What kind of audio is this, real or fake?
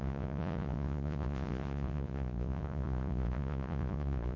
fake